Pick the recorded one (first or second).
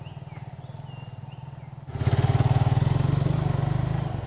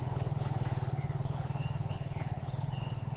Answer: first